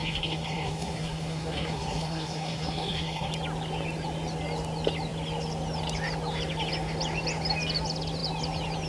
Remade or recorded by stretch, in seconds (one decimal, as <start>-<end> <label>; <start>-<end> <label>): 0.0-3.3 remade; 3.3-8.9 recorded